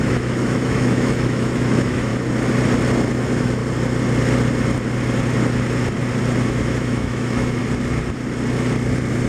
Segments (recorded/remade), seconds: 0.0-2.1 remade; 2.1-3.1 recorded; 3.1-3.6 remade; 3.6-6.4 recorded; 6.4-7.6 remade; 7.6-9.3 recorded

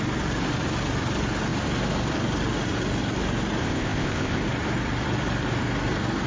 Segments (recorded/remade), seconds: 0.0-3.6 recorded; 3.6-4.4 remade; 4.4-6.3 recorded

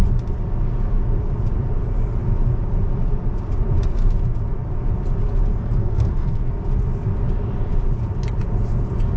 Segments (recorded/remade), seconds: 0.0-5.5 recorded; 5.5-6.5 remade; 6.5-9.2 recorded

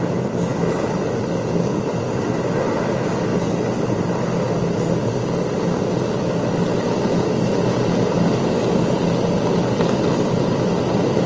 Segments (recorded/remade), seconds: 0.0-11.3 recorded